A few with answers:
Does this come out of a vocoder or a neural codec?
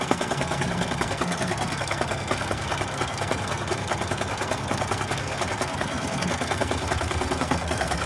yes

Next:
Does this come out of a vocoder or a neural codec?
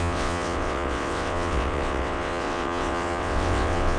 yes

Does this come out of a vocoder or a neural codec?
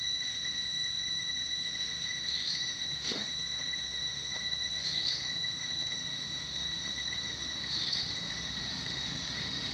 yes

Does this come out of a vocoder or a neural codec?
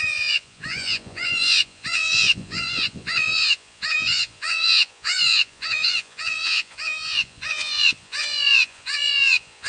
yes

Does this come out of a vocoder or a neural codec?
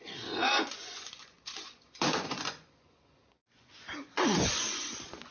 yes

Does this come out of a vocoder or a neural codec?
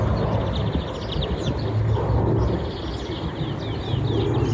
no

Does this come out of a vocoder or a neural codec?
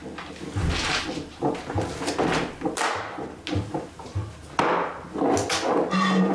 no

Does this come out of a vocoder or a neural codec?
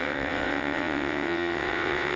yes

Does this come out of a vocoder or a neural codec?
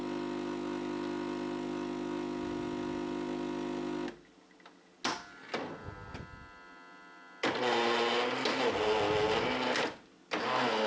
no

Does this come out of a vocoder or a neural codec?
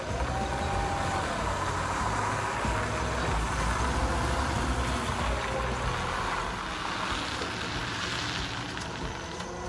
no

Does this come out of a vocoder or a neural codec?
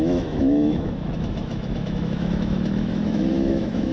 yes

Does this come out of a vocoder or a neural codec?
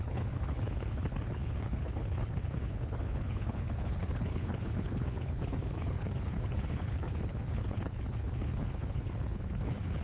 yes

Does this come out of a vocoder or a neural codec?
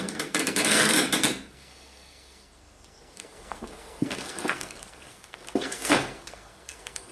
yes